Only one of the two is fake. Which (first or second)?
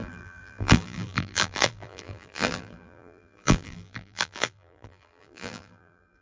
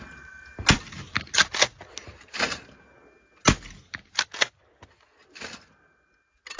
first